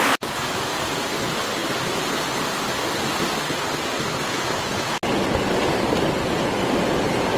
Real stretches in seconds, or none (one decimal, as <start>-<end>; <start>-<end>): 0.0-1.6; 2.4-7.4